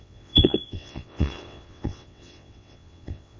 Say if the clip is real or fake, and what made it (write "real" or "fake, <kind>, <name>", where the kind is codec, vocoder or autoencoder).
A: fake, vocoder, WaveNeXt